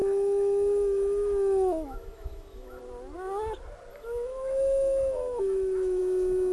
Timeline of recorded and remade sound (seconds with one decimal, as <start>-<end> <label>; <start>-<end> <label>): 0.0-2.8 remade; 2.8-3.9 recorded; 3.9-6.0 remade; 6.0-6.5 recorded